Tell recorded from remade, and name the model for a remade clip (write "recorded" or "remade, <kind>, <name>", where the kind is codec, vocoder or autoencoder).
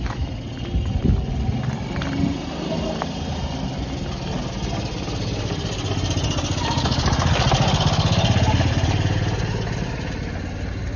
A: recorded